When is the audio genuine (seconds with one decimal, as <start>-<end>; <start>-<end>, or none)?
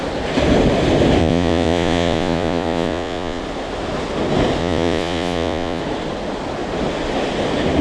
0.0-1.2; 3.4-4.6; 5.8-7.8